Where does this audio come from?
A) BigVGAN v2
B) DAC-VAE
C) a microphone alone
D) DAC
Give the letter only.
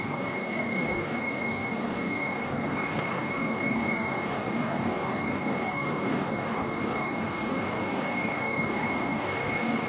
D